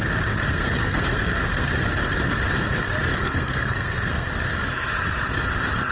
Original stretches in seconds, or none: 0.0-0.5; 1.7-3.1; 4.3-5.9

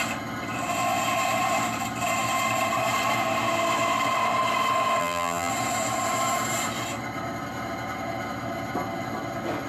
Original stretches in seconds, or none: 0.0-5.0; 5.5-9.7

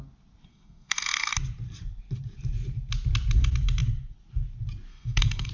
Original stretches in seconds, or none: 0.0-0.5; 1.3-4.9

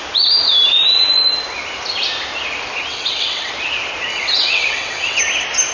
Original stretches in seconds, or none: 0.0-2.9; 3.5-4.1; 5.2-5.7

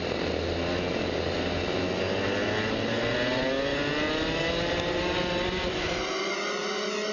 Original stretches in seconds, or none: 0.0-7.1

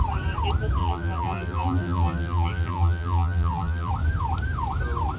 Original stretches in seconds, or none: 0.0-0.8; 3.9-5.2

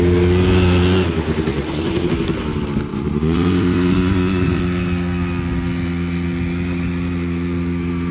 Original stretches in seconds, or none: 0.0-1.5; 2.1-2.9; 4.6-8.1

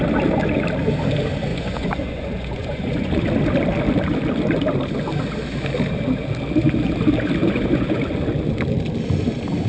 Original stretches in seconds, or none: 0.0-1.5; 3.2-7.4; 8.0-9.7